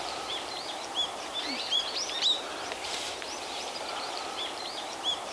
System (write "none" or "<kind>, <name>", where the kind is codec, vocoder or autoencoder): vocoder, BigVGAN v2